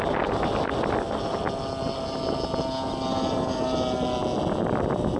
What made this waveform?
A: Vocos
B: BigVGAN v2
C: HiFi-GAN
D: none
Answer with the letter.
D